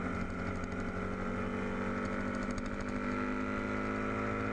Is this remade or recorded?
recorded